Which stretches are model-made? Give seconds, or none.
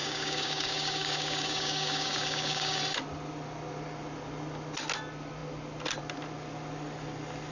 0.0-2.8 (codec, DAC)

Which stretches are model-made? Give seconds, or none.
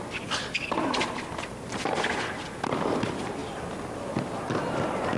none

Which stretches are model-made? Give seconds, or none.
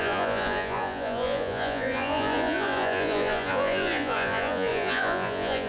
0.0-5.7 (vocoder, Vocos)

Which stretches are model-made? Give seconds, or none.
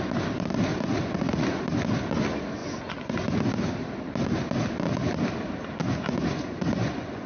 0.7-1.6 (vocoder, Vocos); 2.6-3.5; 5.8-7.3